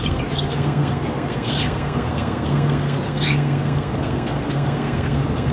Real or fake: fake